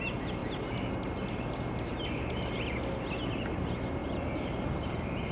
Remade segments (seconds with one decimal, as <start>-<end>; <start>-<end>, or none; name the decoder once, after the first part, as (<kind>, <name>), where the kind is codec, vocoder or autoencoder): 4.0-5.3 (vocoder, BigVGAN v2)